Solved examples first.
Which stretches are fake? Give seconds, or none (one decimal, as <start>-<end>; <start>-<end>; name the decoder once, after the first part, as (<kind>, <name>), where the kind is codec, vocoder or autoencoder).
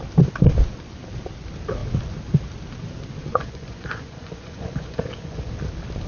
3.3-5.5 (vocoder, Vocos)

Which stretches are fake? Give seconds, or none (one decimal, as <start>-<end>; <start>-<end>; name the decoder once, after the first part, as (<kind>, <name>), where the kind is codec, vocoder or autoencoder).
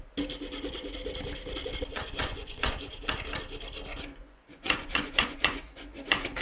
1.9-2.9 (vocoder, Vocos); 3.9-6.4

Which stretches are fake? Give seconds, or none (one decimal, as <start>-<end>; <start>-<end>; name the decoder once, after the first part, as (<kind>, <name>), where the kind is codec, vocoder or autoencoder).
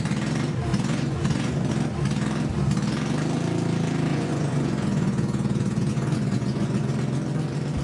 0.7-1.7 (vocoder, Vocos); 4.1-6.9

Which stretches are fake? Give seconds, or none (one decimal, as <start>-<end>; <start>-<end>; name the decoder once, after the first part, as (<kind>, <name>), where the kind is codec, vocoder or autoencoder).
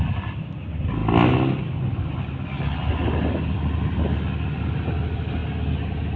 none